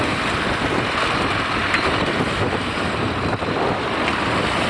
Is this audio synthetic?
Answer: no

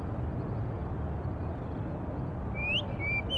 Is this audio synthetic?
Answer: no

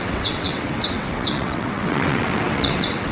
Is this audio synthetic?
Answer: yes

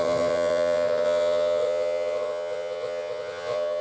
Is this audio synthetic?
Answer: yes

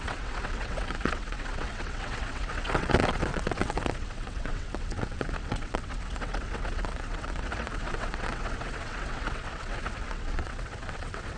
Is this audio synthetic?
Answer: yes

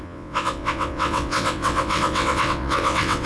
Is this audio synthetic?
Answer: yes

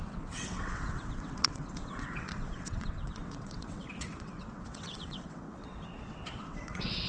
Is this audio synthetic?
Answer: yes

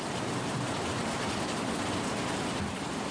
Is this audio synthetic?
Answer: no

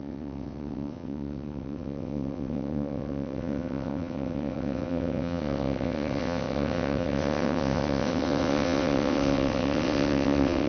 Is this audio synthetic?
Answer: yes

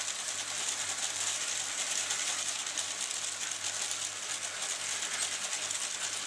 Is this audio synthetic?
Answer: no